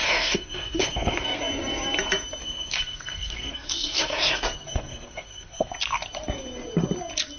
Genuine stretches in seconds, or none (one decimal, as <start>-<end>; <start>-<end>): 1.4-2.4; 5.7-7.4